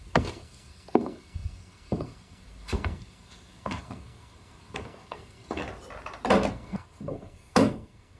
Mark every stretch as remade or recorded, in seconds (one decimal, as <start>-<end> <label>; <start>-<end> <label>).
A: 0.0-5.6 remade; 5.6-6.5 recorded; 6.5-8.2 remade

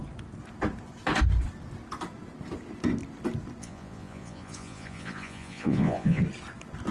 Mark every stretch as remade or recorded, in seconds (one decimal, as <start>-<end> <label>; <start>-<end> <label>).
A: 0.0-3.6 recorded; 3.6-6.2 remade; 6.2-6.9 recorded

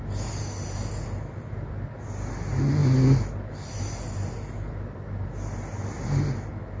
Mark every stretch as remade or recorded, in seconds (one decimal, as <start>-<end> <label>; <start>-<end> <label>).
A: 0.0-6.8 recorded

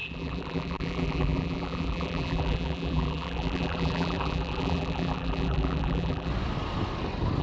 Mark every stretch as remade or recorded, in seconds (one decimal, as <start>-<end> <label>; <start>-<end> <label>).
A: 0.0-6.3 remade; 6.3-7.4 recorded

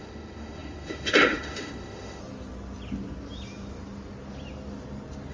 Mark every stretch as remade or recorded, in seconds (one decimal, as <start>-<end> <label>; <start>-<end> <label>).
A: 0.0-2.2 remade; 2.2-5.3 recorded

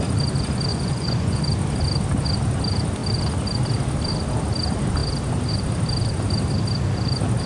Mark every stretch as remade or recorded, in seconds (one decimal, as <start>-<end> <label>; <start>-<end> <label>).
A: 0.0-0.7 recorded; 0.7-1.4 remade; 1.4-7.5 recorded

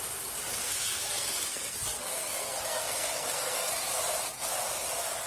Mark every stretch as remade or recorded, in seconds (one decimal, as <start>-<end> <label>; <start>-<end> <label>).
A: 0.0-0.5 recorded; 0.5-3.7 remade; 3.7-5.3 recorded